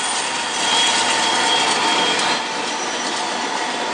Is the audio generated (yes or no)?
no